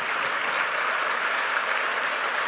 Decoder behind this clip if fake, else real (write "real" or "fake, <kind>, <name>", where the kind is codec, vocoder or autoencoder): real